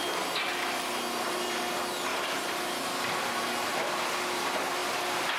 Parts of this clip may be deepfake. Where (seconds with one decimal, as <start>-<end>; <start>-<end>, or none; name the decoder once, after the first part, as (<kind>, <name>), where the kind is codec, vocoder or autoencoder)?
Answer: none

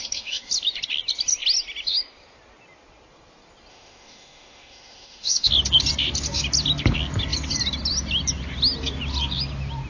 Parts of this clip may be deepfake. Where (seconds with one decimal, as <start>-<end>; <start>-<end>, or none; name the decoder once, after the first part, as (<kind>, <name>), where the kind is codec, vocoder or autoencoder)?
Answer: 0.0-0.5 (autoencoder, DAC-VAE); 3.7-5.5

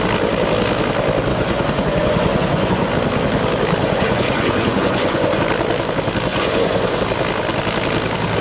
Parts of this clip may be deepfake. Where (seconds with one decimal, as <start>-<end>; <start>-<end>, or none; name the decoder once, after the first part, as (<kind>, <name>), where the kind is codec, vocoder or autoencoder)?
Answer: 1.3-2.9 (vocoder, Vocos); 3.8-5.4; 6.3-7.0